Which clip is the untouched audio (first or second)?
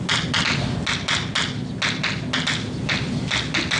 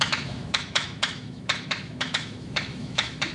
first